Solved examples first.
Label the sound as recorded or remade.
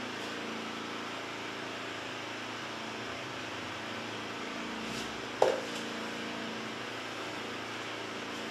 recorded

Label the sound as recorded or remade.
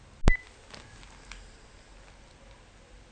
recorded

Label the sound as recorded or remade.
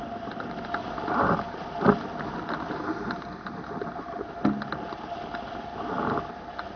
recorded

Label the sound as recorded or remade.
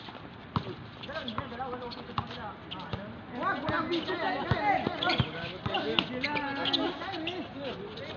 recorded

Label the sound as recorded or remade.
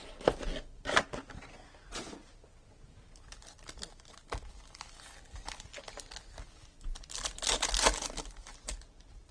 recorded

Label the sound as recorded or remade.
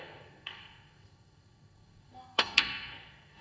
remade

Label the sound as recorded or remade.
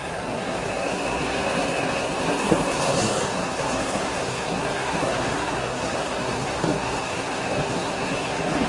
remade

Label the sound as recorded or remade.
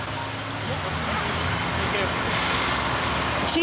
recorded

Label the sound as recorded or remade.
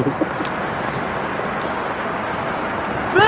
recorded